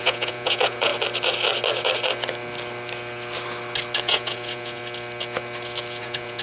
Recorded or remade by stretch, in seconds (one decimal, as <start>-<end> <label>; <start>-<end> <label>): 0.0-0.9 remade; 0.9-4.0 recorded; 4.0-4.8 remade; 4.8-6.0 recorded; 6.0-6.4 remade